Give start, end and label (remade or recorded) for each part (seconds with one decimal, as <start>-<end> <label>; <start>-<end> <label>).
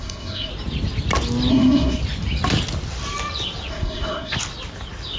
0.0-0.5 remade; 0.5-1.5 recorded; 1.5-2.0 remade; 2.0-3.7 recorded; 3.7-4.3 remade; 4.3-5.2 recorded